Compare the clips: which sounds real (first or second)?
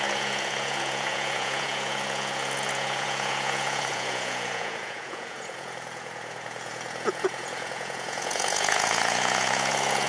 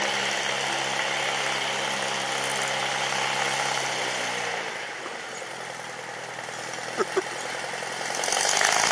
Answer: second